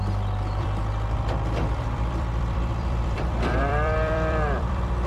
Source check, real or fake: fake